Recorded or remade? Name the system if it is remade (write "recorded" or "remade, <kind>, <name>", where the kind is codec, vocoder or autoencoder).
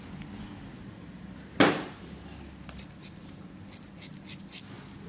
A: recorded